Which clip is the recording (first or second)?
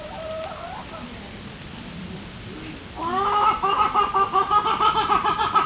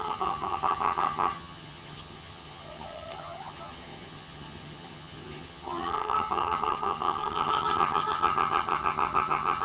first